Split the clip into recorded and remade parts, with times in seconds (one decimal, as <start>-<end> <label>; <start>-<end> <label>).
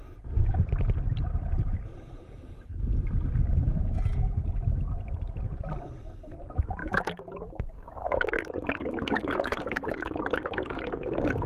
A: 0.0-6.8 recorded; 6.8-11.5 remade